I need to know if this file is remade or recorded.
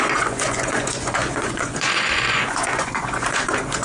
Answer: remade